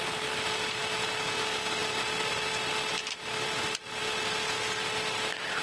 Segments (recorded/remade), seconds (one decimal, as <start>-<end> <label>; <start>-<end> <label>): 0.0-5.6 recorded